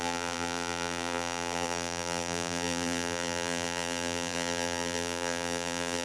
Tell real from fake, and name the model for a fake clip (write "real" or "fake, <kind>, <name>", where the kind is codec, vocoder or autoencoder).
fake, vocoder, BigVGAN v2